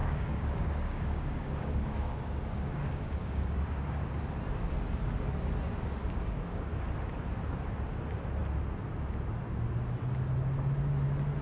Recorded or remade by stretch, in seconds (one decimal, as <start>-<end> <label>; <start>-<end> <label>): 0.0-4.2 remade; 4.2-6.0 recorded; 6.0-6.7 remade; 6.7-11.4 recorded